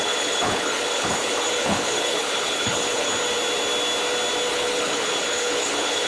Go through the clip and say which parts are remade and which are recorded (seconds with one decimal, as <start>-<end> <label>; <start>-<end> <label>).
0.0-3.1 remade; 3.1-4.5 recorded; 4.5-6.1 remade